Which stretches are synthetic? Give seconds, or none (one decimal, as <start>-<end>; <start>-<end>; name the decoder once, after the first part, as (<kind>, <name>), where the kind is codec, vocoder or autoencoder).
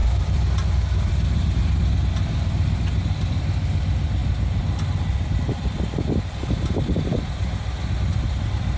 0.0-8.8 (vocoder, BigVGAN v2)